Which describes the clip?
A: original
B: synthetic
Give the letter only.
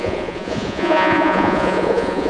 B